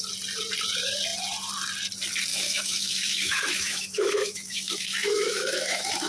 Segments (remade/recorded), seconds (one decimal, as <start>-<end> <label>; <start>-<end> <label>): 0.0-2.3 recorded; 2.3-6.1 remade